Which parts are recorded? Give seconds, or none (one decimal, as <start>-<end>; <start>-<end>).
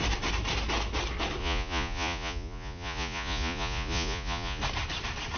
0.0-1.4; 4.6-5.4